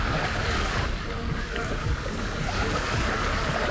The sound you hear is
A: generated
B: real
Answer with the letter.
A